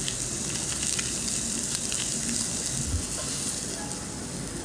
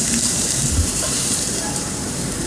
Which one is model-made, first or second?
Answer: second